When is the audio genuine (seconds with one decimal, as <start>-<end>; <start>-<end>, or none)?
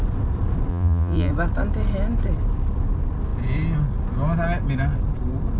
0.0-0.7; 1.3-5.6